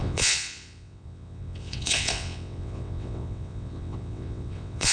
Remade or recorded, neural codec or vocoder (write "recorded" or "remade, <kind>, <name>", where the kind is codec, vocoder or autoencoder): remade, vocoder, WaveNeXt